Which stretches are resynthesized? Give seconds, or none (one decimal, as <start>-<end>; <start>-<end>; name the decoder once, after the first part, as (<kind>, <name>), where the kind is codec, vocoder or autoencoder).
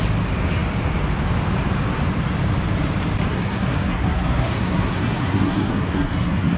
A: 3.3-6.6 (codec, SNAC)